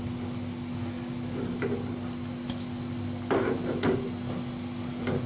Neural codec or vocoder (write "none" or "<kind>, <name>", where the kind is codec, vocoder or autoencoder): none